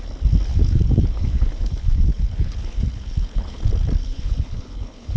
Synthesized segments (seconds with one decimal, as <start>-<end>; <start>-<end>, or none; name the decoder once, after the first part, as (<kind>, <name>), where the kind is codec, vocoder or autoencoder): 0.5-3.6 (codec, HILCodec); 4.0-5.2